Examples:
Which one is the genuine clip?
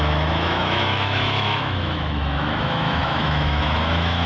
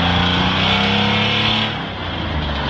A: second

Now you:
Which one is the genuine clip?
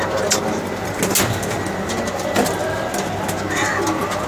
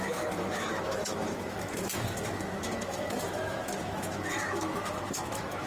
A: first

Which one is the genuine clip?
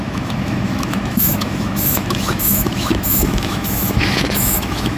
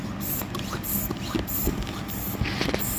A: second